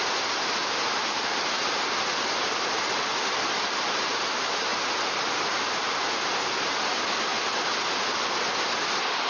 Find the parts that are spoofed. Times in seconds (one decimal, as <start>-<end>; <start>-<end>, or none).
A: 0.6-2.0; 4.7-5.4; 7.3-8.3